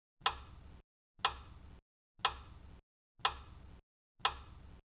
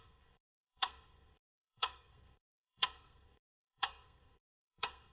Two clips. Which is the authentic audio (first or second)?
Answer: first